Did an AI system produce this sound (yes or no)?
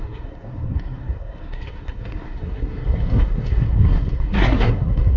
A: yes